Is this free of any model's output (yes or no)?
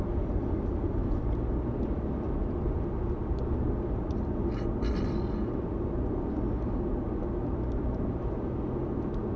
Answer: yes